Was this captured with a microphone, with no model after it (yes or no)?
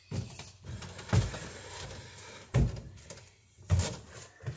yes